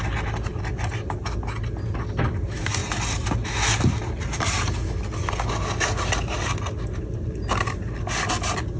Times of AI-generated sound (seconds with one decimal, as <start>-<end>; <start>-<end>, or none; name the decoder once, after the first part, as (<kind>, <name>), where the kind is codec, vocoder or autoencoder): none